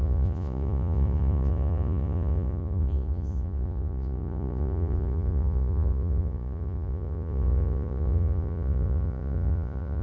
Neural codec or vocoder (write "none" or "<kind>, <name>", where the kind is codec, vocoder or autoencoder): vocoder, Vocos